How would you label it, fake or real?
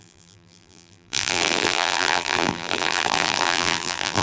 fake